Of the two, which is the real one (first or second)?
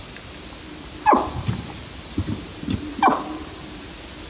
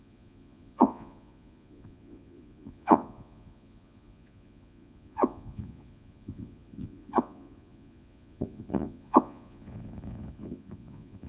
first